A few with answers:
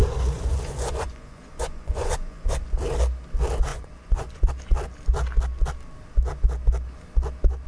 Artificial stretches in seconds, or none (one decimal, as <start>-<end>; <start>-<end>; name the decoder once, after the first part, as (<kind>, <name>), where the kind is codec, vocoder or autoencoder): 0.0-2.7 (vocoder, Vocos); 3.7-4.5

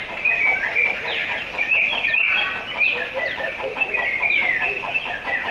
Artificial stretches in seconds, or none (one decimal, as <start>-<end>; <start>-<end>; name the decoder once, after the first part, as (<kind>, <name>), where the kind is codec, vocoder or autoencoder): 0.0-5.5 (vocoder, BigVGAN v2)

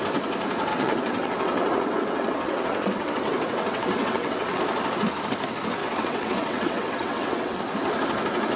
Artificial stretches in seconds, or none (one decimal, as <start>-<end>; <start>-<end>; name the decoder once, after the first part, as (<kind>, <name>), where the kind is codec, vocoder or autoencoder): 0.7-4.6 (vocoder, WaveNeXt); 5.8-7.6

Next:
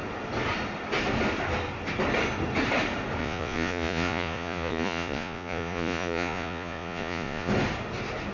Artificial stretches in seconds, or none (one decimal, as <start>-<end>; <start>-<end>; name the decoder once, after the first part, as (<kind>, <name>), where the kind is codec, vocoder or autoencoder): 3.2-7.5 (vocoder, Vocos)

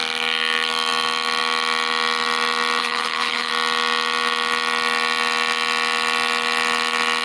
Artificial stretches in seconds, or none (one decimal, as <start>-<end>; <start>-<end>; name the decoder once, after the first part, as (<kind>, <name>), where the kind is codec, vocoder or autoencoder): 2.8-3.5 (codec, HILCodec)

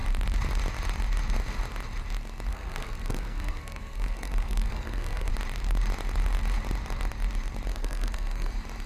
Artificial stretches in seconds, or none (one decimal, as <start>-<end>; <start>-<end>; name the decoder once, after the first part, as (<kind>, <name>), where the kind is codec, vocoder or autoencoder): 2.5-5.3 (codec, SNAC); 7.7-8.5

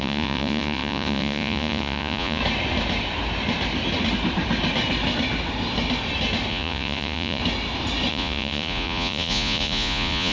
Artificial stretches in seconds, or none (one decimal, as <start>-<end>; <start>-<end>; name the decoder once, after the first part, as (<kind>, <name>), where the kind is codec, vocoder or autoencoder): 0.0-2.4 (vocoder, Vocos); 6.5-7.4; 8.1-10.3